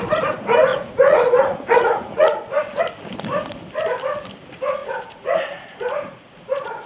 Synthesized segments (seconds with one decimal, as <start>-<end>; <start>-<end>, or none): 0.7-2.8; 4.8-6.9